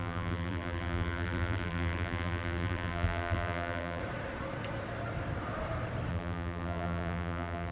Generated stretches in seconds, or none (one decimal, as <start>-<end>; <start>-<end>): 0.0-4.0; 6.1-7.7